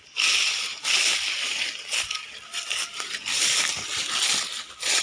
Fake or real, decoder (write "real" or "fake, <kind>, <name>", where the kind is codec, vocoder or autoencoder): real